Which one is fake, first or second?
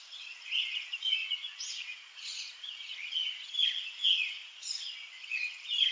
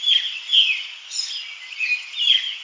first